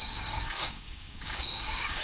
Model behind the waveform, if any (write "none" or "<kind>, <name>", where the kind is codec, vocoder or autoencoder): codec, DAC